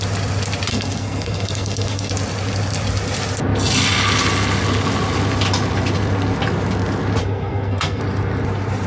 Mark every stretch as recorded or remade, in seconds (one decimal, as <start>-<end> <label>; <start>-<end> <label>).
0.0-0.7 recorded; 0.7-2.1 remade; 2.1-7.2 recorded; 7.2-8.0 remade; 8.0-8.9 recorded